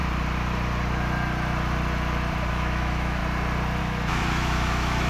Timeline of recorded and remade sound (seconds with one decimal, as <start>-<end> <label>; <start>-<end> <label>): 0.0-2.5 recorded; 2.5-3.2 remade; 3.2-3.8 recorded; 3.8-5.1 remade